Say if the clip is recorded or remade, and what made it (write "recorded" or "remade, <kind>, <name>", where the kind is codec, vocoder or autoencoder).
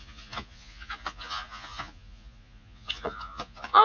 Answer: remade, vocoder, Vocos